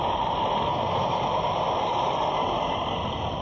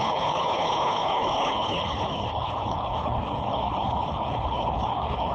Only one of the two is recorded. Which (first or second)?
first